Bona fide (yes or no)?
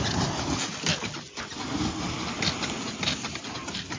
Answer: yes